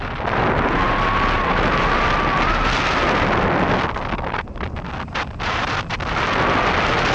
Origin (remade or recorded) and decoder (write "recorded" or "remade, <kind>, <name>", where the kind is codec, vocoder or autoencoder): recorded